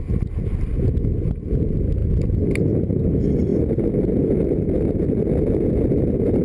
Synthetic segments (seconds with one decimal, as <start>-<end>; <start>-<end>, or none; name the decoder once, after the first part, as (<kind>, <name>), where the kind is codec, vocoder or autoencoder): none